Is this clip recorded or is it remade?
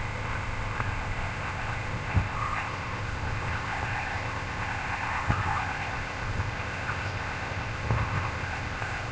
remade